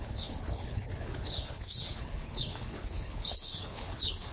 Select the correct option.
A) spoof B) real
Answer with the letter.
A